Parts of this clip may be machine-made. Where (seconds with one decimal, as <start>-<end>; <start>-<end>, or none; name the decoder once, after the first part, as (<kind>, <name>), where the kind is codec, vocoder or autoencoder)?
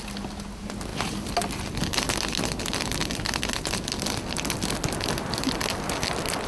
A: none